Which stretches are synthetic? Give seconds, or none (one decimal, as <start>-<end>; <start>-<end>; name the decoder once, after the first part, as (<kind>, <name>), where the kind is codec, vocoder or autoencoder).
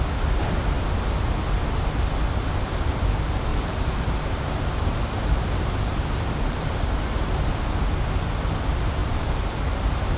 3.5-7.5 (vocoder, BigVGAN v2); 9.0-10.2